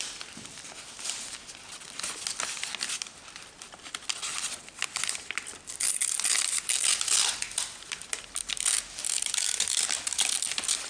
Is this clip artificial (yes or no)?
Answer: no